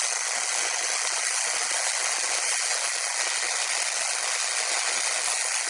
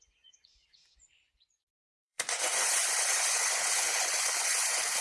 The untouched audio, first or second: first